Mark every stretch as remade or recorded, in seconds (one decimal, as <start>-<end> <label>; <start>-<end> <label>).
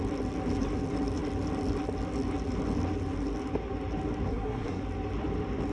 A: 0.0-4.3 recorded; 4.3-4.8 remade; 4.8-5.7 recorded